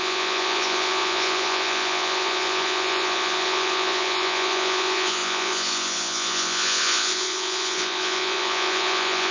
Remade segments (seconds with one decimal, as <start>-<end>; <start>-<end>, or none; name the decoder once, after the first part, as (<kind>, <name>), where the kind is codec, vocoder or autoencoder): 0.0-9.3 (vocoder, Vocos)